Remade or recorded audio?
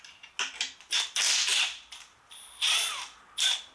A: recorded